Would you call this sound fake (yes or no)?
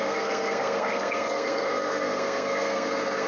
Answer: yes